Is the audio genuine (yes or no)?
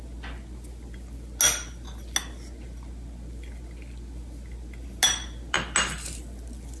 yes